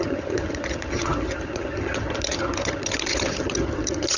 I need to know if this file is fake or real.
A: fake